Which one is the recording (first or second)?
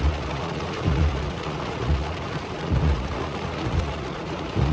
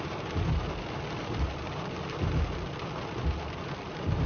second